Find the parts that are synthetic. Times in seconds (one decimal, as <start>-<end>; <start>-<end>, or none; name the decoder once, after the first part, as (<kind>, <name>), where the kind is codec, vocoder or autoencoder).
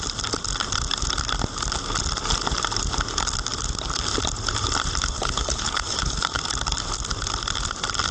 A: 5.1-6.4 (codec, HILCodec)